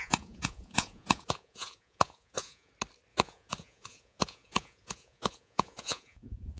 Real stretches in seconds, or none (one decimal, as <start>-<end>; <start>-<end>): 2.7-3.1